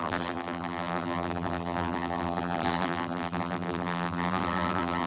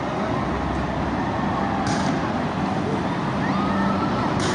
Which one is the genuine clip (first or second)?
second